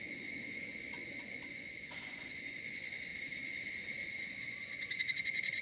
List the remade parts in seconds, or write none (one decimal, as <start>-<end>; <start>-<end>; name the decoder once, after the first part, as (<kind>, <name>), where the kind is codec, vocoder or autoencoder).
0.0-3.1 (vocoder, Vocos); 4.1-5.6